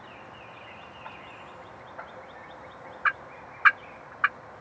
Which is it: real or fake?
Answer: real